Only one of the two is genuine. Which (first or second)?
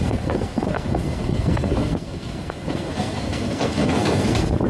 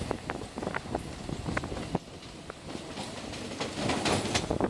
second